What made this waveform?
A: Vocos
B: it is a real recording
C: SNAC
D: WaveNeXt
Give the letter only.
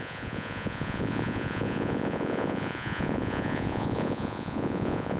A